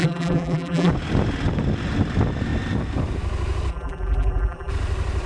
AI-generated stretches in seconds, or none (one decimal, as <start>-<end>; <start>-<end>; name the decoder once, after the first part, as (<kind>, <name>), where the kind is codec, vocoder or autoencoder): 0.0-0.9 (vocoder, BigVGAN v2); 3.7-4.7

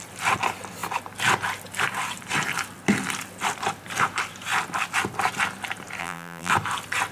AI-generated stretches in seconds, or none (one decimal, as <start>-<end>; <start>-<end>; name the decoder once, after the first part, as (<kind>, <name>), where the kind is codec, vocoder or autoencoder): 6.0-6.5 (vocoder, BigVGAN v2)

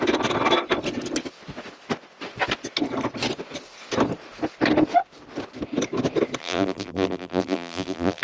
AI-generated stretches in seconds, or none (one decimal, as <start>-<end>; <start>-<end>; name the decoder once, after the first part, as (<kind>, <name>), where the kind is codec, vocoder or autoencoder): 6.4-8.2 (vocoder, BigVGAN v2)

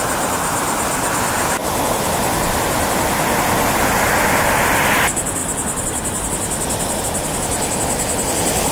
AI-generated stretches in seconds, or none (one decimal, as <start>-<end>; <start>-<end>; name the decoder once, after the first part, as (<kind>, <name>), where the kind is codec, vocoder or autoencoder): none

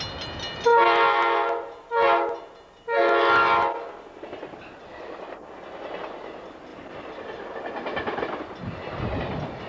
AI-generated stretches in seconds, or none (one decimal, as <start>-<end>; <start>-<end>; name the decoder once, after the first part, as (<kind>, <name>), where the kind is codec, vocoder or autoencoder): 6.7-8.4 (vocoder, BigVGAN v2)

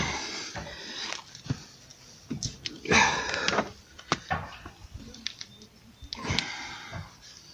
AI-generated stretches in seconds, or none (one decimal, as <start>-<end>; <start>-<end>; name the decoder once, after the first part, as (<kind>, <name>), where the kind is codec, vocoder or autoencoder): 4.8-5.9 (vocoder, BigVGAN v2)

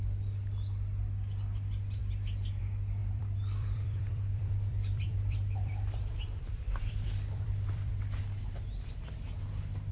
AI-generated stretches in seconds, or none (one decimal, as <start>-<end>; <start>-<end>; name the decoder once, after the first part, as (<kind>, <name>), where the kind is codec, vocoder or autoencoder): 3.0-7.9 (vocoder, BigVGAN v2)